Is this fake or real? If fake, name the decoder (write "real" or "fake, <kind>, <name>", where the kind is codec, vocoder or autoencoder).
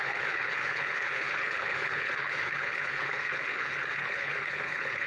fake, codec, HILCodec